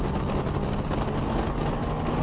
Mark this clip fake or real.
real